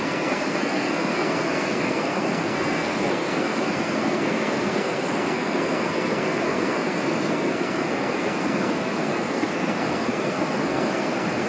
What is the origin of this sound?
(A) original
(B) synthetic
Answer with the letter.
B